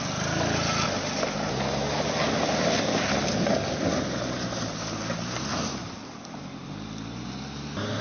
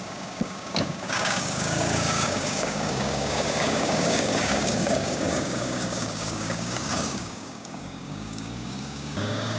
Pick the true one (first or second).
first